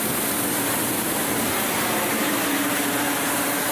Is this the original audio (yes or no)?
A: yes